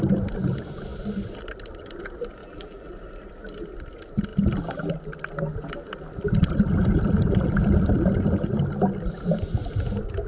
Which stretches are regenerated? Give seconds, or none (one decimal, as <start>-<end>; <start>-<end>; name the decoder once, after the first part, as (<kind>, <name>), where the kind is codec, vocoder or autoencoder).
2.4-2.9 (vocoder, BigVGAN v2)